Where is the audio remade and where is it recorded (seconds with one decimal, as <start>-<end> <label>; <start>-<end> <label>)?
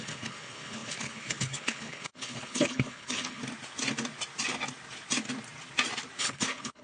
0.0-3.4 remade; 3.4-6.2 recorded; 6.2-6.8 remade